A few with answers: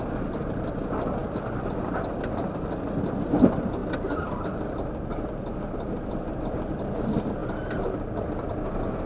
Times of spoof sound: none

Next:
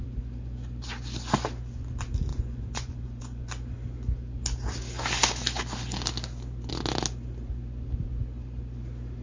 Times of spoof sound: 2.3-3.5 (vocoder, Vocos)

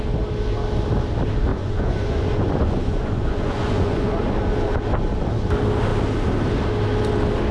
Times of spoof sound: 1.5-4.2 (vocoder, Vocos)

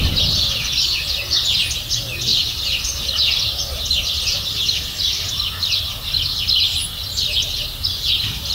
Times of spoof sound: none

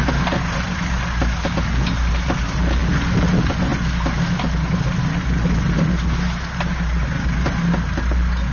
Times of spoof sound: none

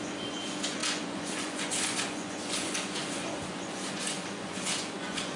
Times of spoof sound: 0.0-5.4 (vocoder, Vocos)

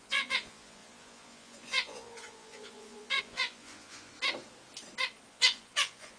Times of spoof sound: 0.0-4.1 (vocoder, Vocos); 5.3-6.2

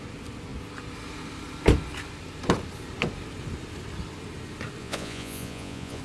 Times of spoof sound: 4.8-6.0 (vocoder, Vocos)